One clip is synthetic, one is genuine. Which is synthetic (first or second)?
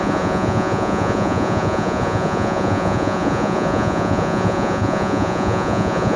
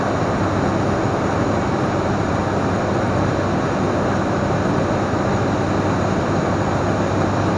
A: first